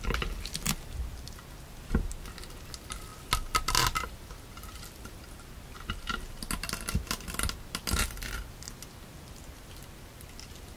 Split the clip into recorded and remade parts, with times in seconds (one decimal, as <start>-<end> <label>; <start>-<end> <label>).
0.0-10.8 recorded